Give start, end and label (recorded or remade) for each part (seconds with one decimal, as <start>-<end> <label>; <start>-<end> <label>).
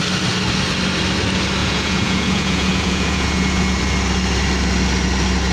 0.0-1.6 recorded; 1.6-3.8 remade; 3.8-5.5 recorded